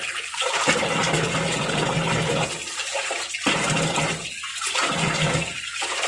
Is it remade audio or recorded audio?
recorded